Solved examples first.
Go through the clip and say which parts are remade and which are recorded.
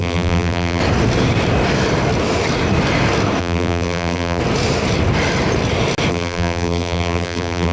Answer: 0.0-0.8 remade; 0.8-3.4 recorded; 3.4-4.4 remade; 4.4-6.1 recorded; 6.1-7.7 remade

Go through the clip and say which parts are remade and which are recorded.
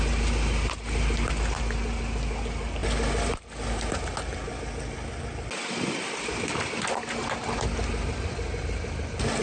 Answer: 0.0-9.4 recorded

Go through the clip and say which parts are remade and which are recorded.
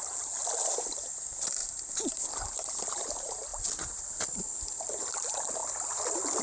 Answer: 0.0-0.4 recorded; 0.4-1.2 remade; 1.2-5.6 recorded; 5.6-6.4 remade